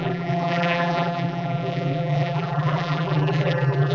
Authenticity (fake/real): fake